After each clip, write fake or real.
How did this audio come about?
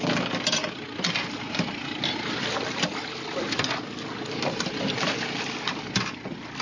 real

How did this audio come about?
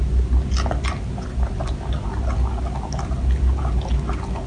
real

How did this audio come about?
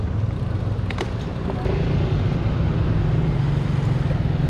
real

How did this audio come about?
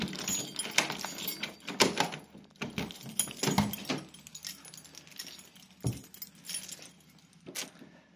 real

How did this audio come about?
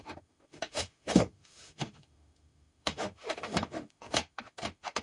fake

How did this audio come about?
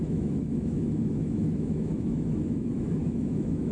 fake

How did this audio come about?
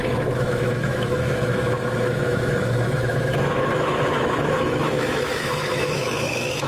fake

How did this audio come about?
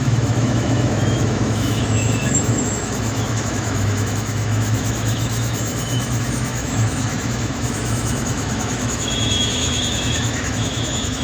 fake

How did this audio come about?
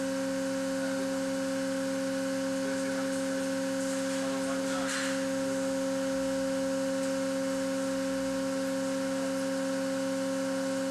real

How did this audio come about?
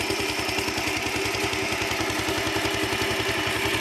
real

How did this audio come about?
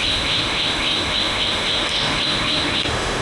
fake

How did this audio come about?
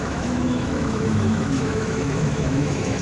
fake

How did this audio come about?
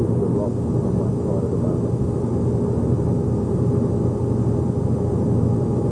real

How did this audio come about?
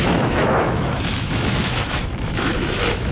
fake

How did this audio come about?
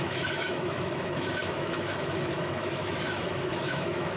fake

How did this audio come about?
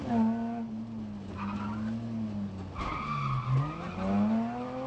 real